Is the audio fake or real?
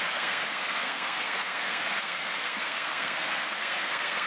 fake